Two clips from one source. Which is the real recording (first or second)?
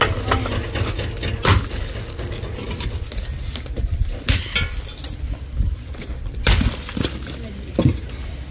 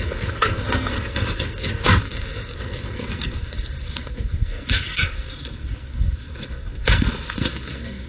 first